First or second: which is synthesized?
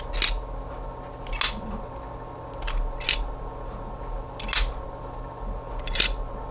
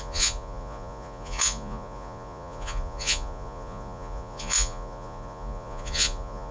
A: second